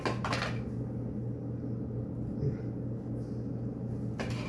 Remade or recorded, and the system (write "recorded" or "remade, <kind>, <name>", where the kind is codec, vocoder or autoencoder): recorded